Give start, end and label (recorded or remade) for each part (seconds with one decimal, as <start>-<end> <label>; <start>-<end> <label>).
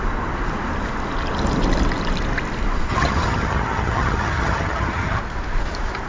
0.0-2.9 recorded; 2.9-5.2 remade; 5.2-6.1 recorded